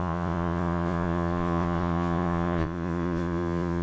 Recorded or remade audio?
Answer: remade